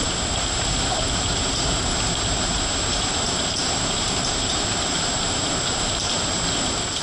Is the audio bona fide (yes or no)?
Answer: no